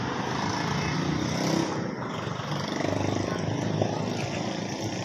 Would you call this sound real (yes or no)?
yes